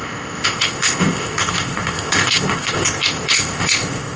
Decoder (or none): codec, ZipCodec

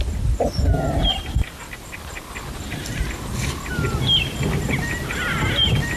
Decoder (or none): none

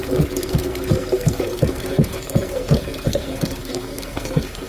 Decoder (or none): codec, SNAC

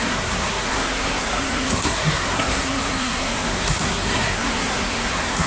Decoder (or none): codec, SNAC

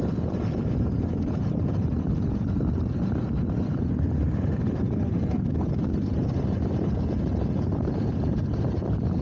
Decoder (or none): vocoder, BigVGAN v2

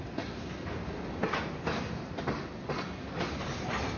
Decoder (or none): none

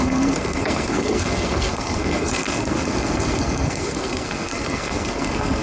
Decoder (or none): codec, SNAC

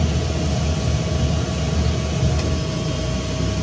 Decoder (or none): none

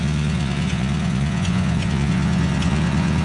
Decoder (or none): vocoder, Vocos